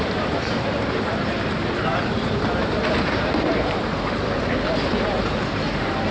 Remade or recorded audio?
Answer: remade